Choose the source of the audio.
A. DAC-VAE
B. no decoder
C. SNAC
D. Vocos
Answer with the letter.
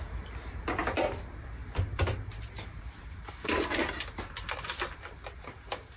B